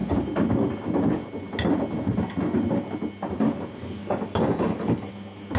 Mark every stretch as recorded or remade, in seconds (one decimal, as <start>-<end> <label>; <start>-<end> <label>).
0.0-4.0 recorded; 4.0-5.1 remade; 5.1-5.6 recorded